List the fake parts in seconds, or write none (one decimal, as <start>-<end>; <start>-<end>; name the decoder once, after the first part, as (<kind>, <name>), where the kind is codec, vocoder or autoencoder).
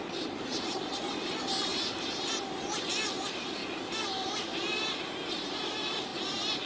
0.0-1.7 (vocoder, BigVGAN v2); 2.7-3.6; 4.1-4.5; 5.5-6.1